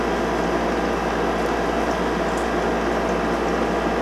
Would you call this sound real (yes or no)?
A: yes